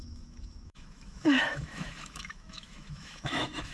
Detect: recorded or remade remade